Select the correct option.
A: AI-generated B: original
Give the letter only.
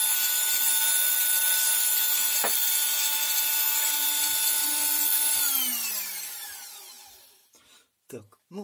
B